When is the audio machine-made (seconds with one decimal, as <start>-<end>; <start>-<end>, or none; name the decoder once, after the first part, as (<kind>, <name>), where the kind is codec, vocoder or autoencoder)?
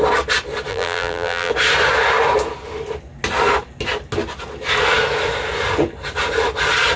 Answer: 0.7-1.5 (vocoder, BigVGAN v2)